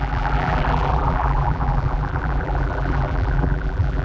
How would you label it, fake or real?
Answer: fake